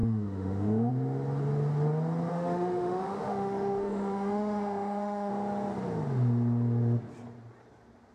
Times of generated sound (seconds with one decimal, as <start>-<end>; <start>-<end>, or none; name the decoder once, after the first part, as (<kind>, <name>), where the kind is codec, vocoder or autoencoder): 0.0-0.9 (autoencoder, DAC-VAE); 2.3-5.3